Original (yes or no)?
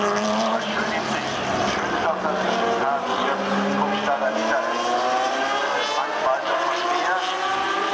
yes